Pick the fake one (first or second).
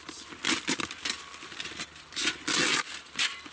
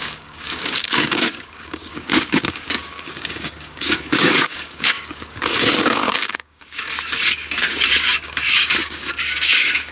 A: second